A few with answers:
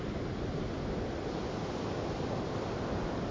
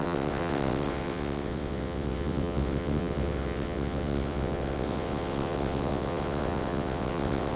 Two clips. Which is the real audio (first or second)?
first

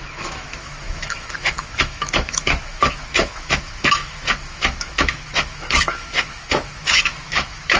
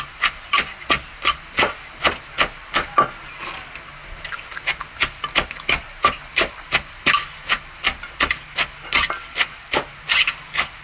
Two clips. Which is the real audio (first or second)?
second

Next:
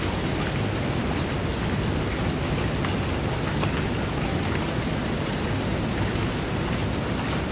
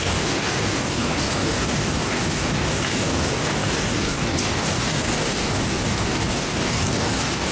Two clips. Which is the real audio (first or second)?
first